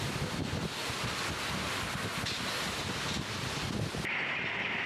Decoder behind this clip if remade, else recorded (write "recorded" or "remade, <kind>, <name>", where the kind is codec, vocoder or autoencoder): recorded